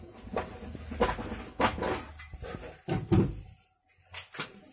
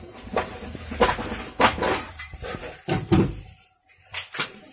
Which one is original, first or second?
first